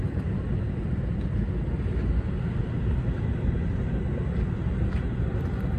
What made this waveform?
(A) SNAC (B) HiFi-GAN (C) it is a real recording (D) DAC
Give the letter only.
C